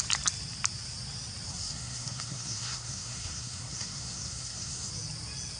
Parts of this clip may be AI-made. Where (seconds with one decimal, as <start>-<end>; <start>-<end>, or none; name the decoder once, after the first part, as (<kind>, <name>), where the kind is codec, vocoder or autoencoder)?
1.5-4.9 (codec, SNAC)